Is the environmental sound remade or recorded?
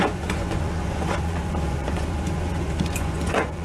remade